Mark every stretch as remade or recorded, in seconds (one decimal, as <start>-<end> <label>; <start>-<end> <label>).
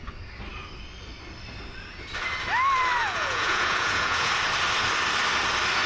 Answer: 0.0-3.0 recorded; 3.0-4.3 remade; 4.3-5.9 recorded